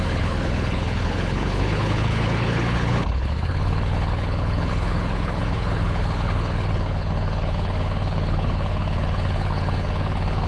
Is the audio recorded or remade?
remade